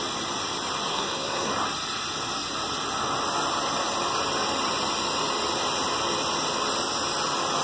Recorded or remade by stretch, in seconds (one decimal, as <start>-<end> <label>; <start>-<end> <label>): 0.0-0.9 recorded; 0.9-1.5 remade; 1.5-7.6 recorded